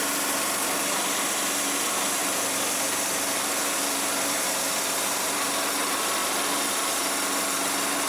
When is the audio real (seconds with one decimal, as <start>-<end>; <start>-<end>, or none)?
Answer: 0.0-2.2; 5.7-6.2; 6.7-8.1